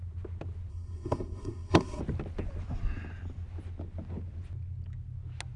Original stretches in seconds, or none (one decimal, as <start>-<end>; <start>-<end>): 0.0-0.7; 2.0-5.6